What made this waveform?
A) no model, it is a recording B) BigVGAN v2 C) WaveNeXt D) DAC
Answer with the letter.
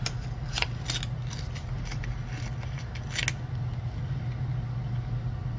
A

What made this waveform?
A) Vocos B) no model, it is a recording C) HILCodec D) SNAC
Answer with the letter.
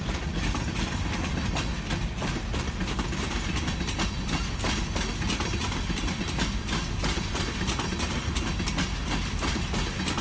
B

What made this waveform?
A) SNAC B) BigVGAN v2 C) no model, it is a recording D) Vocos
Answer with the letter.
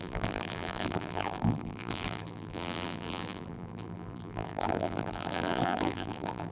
B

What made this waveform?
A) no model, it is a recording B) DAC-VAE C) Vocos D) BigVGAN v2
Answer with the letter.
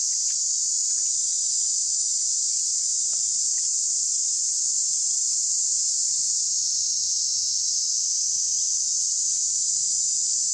A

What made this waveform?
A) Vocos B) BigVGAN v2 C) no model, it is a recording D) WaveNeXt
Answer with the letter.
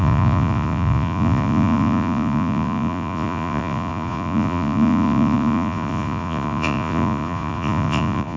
A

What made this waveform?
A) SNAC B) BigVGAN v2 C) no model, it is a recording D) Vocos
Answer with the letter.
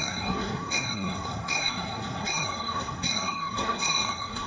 A